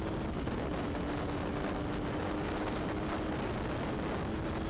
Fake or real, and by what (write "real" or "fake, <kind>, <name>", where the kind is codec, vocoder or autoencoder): real